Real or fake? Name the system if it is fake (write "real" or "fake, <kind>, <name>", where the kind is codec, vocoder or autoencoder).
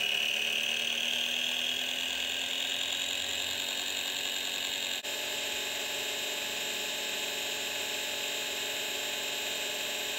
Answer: real